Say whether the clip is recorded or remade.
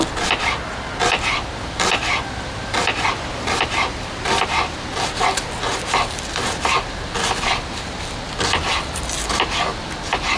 recorded